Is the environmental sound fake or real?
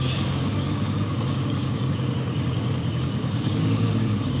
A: fake